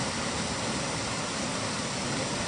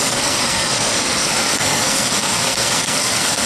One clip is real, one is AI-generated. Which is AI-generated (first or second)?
second